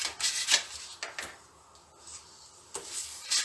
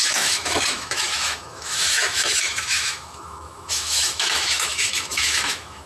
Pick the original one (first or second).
first